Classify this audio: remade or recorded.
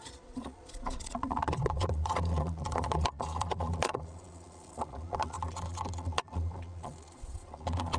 remade